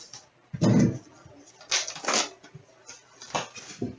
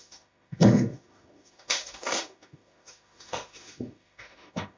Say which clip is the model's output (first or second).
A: second